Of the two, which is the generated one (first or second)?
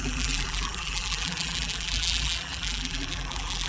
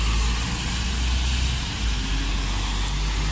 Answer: first